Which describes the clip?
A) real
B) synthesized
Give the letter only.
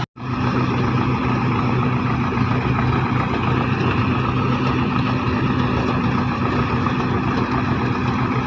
A